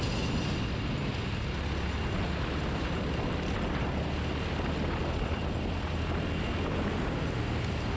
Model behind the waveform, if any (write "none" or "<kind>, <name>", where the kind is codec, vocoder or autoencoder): none